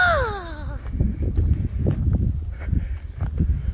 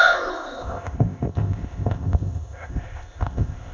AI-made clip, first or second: second